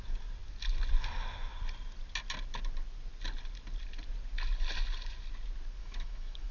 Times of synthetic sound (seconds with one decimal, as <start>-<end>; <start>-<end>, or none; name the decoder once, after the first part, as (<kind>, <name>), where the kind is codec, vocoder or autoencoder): 5.8-6.5 (autoencoder, DAC-VAE)